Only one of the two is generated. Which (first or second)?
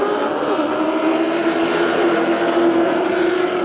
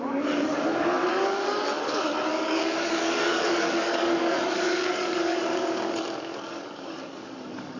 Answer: second